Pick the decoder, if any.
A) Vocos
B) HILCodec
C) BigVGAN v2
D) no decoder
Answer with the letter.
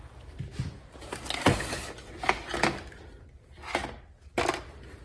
D